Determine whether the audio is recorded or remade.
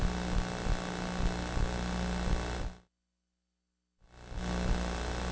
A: recorded